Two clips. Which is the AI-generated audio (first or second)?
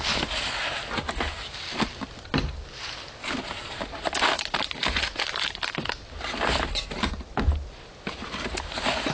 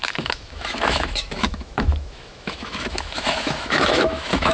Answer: second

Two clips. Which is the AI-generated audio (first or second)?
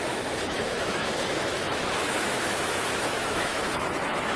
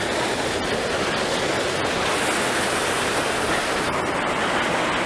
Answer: first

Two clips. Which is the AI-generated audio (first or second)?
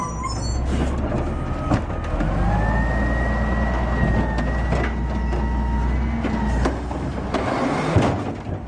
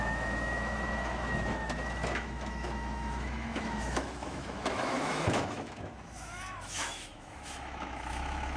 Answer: second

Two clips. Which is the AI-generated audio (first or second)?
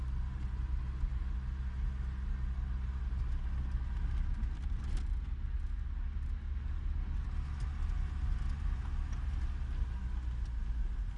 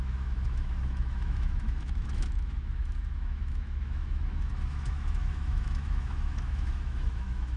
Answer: second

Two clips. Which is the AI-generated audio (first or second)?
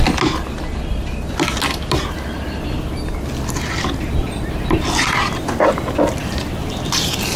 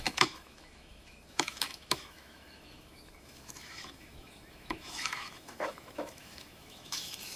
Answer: second